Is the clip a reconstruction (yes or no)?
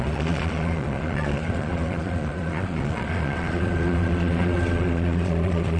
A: yes